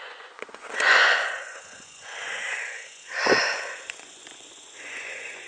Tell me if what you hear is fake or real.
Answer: fake